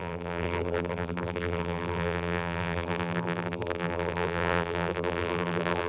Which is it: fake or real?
fake